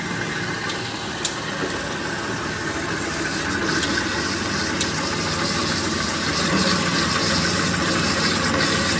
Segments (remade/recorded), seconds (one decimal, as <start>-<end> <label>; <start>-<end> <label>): 0.0-5.6 recorded; 5.6-6.3 remade; 6.3-9.0 recorded